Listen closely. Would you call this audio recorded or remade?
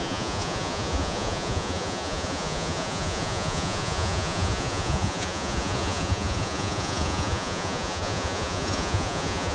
remade